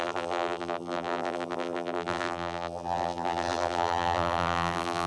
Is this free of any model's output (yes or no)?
no